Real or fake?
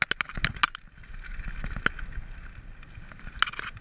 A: real